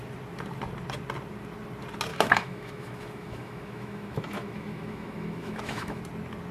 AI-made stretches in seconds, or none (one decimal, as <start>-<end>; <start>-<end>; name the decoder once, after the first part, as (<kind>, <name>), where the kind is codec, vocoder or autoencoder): 2.1-6.0 (autoencoder, DAC-VAE)